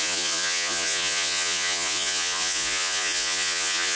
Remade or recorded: remade